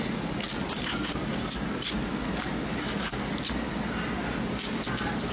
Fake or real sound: real